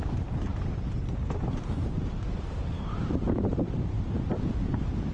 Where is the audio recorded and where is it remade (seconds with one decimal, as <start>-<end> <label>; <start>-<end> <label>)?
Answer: 0.0-0.5 remade; 0.5-1.4 recorded; 1.4-5.1 remade